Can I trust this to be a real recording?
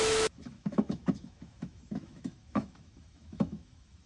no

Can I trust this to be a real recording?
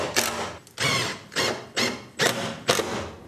yes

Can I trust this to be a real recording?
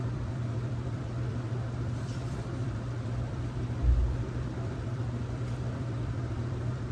no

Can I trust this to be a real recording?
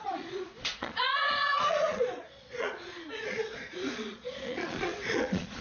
no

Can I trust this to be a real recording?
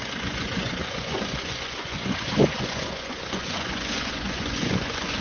no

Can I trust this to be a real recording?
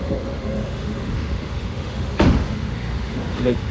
no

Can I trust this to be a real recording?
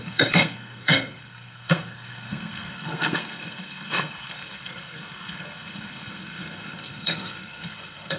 no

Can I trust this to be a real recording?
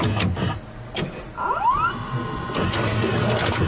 yes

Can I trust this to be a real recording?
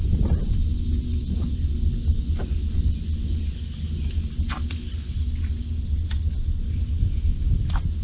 yes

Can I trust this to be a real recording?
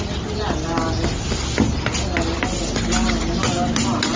yes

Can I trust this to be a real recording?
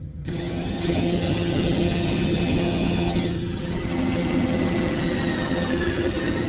no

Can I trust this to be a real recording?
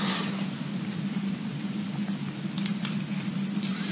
yes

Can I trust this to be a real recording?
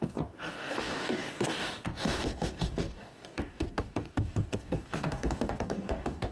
no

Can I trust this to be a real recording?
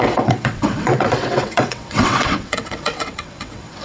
no